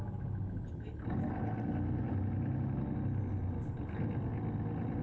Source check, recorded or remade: recorded